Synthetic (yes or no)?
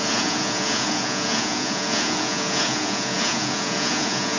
yes